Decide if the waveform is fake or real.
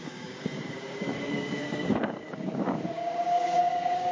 fake